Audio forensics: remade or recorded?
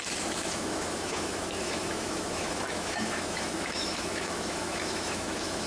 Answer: remade